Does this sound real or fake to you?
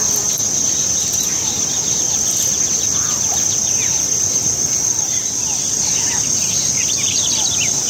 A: real